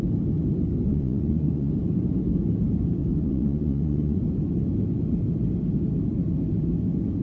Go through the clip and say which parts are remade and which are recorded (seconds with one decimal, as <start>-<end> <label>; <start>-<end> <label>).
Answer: 0.0-0.9 recorded; 0.9-1.7 remade; 1.7-3.0 recorded; 3.0-4.2 remade; 4.2-7.2 recorded